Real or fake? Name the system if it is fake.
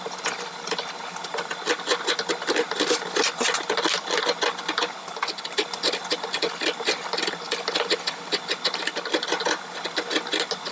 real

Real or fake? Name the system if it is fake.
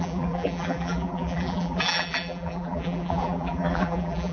fake, vocoder, BigVGAN v2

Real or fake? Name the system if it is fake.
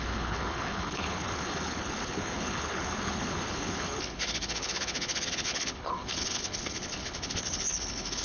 fake, codec, HILCodec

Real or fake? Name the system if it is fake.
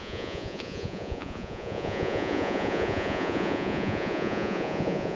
fake, vocoder, Vocos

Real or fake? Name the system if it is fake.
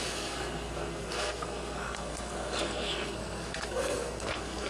fake, codec, SNAC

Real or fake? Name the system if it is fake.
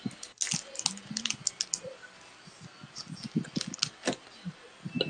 real